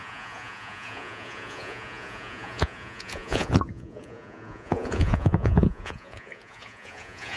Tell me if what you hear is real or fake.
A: fake